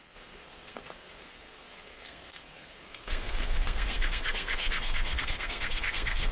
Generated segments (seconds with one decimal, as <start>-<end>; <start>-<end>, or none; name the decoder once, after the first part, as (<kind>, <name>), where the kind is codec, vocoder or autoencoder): 0.0-6.3 (codec, SNAC)